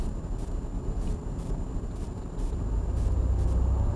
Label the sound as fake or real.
real